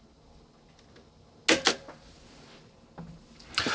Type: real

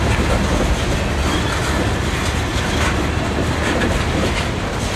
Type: real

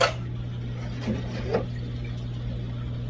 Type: real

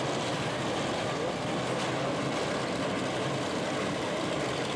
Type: real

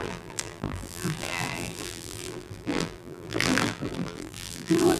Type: fake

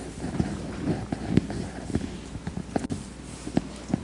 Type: real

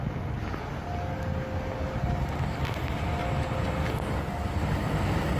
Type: real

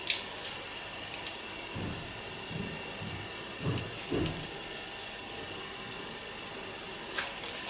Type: real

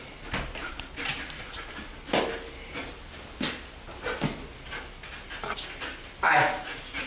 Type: real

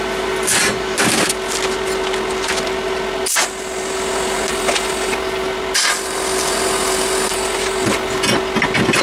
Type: real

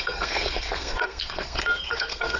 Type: fake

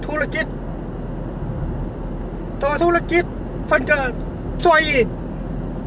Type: real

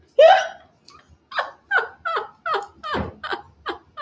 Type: real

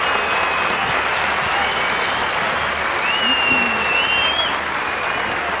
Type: real